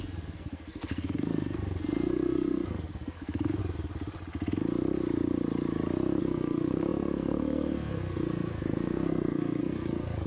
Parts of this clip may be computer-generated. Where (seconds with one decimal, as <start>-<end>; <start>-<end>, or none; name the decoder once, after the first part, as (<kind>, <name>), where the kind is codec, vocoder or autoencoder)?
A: 0.0-3.6 (codec, SNAC); 6.2-10.3